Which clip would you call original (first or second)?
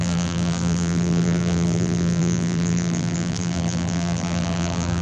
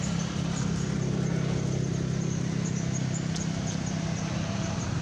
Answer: second